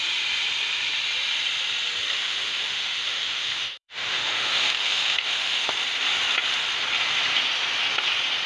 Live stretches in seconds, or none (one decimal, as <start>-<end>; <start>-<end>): 0.0-2.0; 5.7-8.5